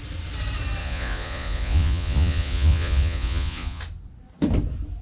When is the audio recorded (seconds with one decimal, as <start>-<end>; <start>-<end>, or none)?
0.0-0.8; 3.8-5.0